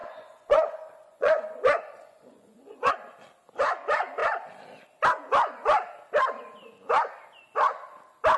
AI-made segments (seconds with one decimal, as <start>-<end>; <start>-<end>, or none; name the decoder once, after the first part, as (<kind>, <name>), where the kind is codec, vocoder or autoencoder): 0.0-2.9 (vocoder, Vocos)